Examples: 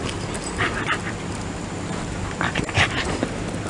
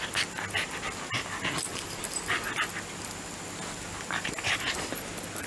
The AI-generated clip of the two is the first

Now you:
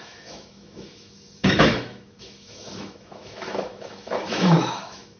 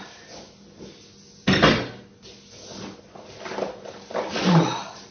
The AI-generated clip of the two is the first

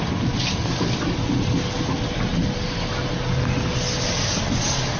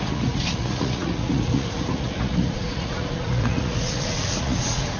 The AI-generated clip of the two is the second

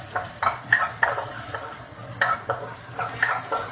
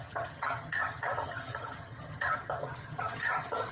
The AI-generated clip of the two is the second